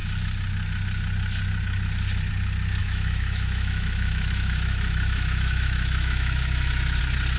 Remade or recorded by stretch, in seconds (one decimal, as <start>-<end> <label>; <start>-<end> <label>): 0.0-2.8 recorded; 2.8-7.0 remade; 7.0-7.4 recorded